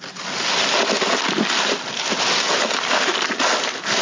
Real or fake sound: real